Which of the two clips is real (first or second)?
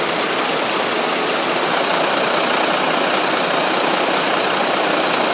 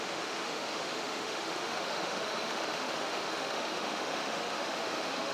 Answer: first